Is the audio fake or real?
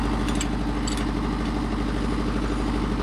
real